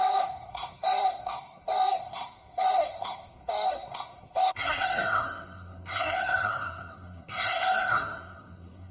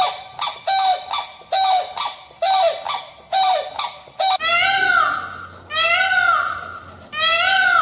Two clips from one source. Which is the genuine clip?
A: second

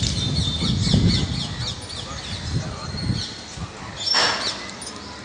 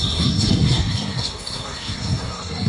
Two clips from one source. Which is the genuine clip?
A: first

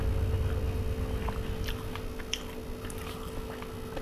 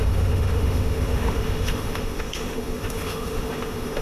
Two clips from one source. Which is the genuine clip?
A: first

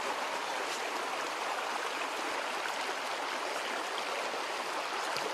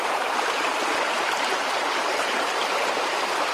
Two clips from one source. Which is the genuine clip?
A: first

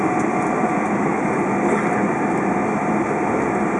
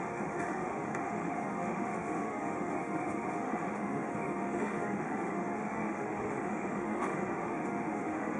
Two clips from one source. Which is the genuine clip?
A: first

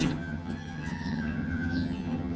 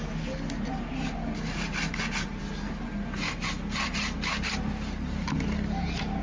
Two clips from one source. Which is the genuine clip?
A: second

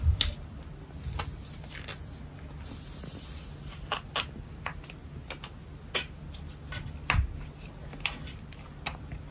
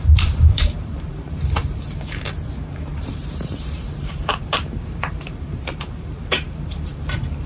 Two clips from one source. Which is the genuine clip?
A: first